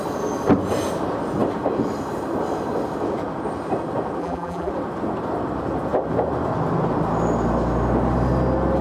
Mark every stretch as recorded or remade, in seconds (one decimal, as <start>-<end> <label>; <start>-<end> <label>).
0.0-4.2 recorded; 4.2-4.7 remade; 4.7-8.8 recorded